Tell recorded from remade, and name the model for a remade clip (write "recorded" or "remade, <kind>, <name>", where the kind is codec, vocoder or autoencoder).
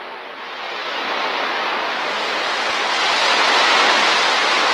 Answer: recorded